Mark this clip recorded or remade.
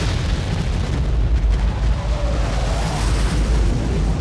recorded